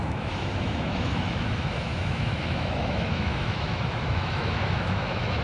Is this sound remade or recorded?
remade